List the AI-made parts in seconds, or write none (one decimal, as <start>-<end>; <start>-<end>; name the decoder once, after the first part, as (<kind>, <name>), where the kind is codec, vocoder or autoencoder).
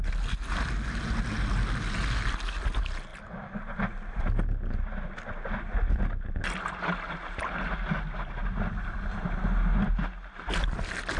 none